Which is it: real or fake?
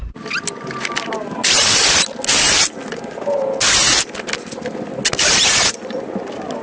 real